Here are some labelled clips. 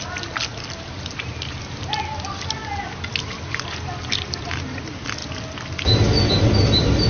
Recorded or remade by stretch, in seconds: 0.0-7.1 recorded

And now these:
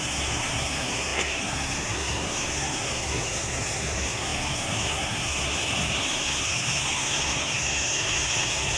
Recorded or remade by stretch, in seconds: 0.0-8.8 remade